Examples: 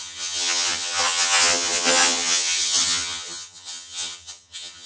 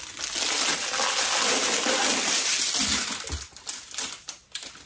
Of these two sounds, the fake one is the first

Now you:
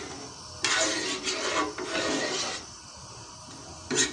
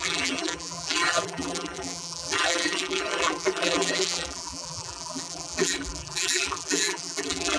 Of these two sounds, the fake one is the second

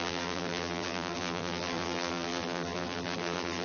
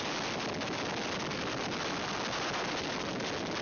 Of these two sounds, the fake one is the first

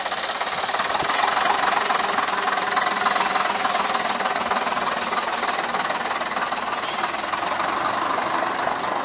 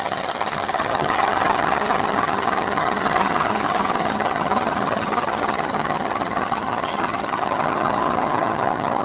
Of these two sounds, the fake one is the second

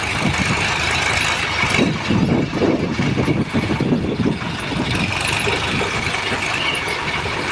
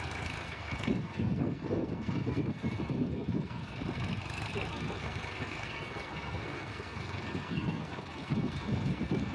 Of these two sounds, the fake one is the second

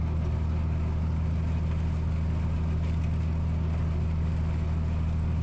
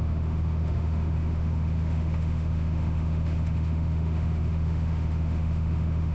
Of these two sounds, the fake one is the second